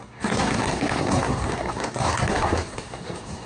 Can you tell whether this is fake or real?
fake